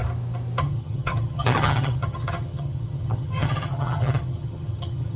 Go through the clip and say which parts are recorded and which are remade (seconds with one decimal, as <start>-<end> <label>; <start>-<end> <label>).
0.0-0.6 recorded; 0.6-5.2 remade